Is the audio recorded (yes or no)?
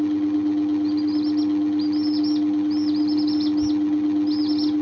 yes